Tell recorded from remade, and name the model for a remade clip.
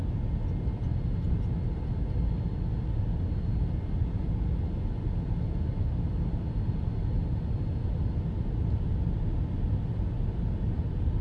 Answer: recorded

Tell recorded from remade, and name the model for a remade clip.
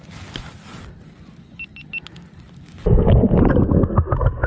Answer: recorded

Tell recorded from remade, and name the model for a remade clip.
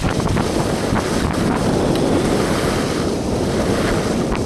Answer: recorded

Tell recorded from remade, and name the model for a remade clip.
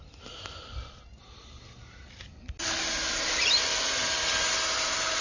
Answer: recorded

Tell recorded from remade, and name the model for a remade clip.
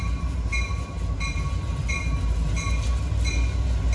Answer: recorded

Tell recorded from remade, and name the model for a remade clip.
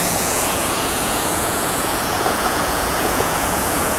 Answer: remade, vocoder, Vocos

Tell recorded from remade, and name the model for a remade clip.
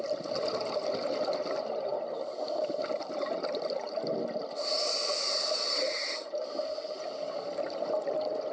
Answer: recorded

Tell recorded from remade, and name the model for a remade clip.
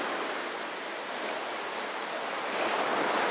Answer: recorded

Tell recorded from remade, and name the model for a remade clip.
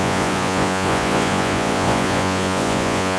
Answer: remade, vocoder, Vocos